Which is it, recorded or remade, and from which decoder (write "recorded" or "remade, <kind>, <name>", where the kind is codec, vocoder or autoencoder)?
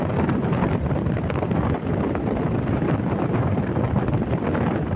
remade, vocoder, BigVGAN v2